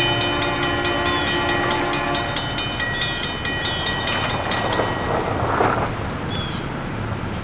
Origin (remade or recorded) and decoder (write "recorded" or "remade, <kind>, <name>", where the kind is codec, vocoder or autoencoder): recorded